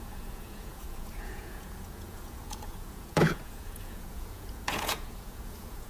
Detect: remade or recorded remade